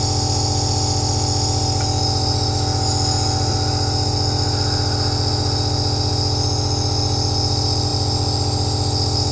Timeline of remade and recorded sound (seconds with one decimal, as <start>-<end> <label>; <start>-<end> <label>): 0.0-9.3 recorded